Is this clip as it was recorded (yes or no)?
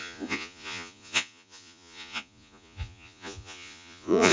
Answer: no